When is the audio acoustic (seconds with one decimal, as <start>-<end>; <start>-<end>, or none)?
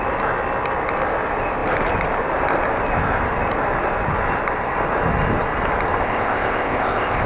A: 0.0-6.0